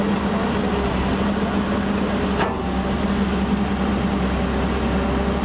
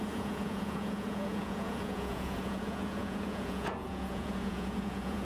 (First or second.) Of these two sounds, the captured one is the first